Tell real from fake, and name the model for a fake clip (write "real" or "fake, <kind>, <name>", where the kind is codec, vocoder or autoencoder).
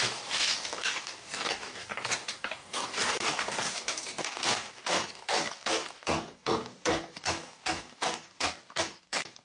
fake, codec, DAC